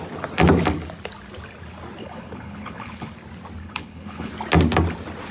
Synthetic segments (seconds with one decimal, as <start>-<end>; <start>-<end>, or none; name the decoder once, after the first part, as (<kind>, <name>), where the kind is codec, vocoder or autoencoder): 2.0-3.1 (codec, HILCodec); 3.6-4.3

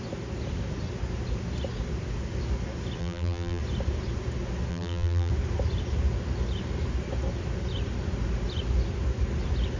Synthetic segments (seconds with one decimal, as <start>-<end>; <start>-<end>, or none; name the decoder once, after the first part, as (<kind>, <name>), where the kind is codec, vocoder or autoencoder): 3.0-3.6 (vocoder, BigVGAN v2); 4.7-5.3

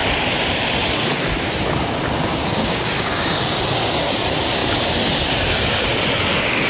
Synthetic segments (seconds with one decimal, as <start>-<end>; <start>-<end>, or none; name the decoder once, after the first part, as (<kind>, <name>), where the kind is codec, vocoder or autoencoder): 2.6-3.4 (codec, DAC)

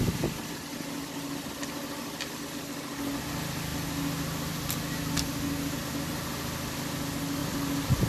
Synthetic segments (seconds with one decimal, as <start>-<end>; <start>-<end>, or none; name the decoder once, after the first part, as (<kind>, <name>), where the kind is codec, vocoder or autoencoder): 7.4-8.1 (vocoder, BigVGAN v2)

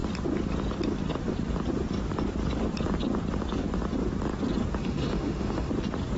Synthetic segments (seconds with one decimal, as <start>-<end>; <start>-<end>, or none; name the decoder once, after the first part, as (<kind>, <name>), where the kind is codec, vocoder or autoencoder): 4.8-5.7 (autoencoder, DAC-VAE)

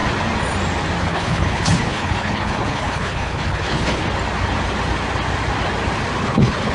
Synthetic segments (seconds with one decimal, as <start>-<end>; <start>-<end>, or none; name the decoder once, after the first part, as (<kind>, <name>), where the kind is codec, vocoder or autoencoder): 1.0-4.0 (codec, HILCodec); 6.2-6.7

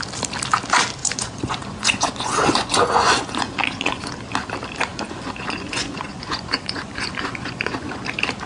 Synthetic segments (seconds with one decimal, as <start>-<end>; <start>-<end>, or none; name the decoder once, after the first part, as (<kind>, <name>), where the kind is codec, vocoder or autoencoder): 1.0-4.1 (vocoder, Vocos); 4.9-8.0

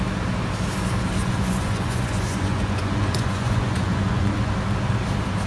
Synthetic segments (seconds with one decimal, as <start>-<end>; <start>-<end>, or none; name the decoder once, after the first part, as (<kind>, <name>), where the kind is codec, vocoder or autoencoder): 1.2-4.5 (vocoder, Vocos)